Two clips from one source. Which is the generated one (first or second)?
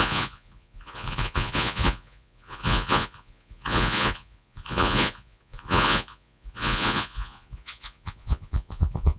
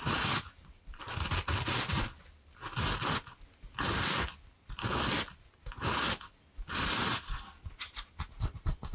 first